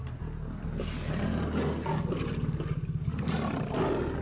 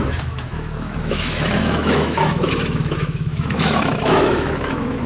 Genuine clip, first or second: first